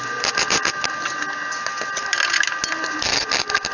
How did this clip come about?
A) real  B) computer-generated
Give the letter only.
A